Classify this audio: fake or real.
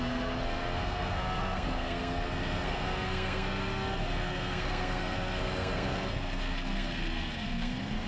fake